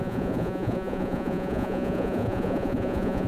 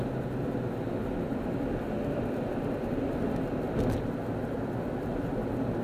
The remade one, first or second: first